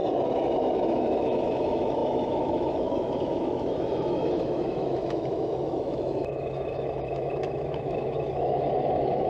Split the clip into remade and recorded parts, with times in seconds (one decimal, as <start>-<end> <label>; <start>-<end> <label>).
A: 0.0-0.6 recorded; 0.6-9.3 remade